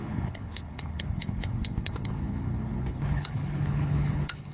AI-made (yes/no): yes